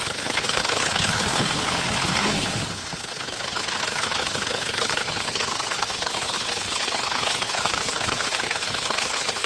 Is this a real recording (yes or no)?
no